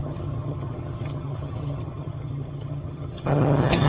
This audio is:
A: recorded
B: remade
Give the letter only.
B